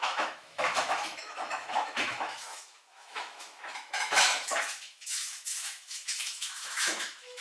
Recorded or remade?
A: remade